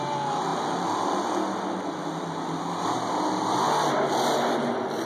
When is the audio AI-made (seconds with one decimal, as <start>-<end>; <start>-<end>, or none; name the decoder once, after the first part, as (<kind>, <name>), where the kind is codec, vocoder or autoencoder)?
none